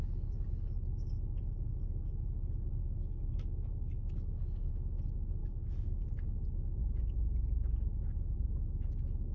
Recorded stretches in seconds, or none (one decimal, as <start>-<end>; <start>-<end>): 0.0-2.8; 4.7-5.4; 6.0-9.3